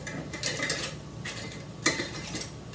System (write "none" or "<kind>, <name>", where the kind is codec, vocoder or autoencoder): none